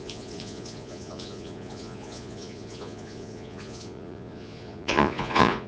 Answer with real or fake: fake